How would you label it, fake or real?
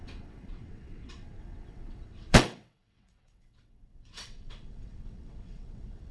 fake